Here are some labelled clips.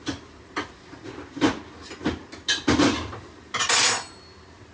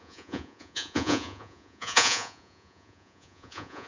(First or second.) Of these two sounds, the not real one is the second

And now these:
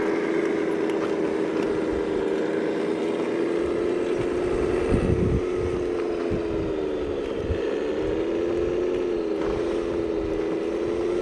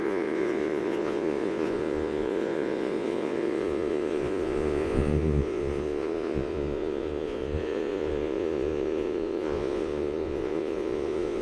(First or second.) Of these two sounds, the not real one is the second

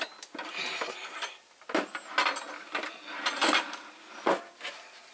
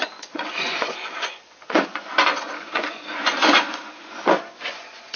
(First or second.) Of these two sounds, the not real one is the second